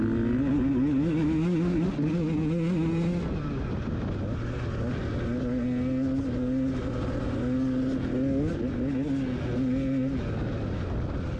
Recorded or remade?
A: recorded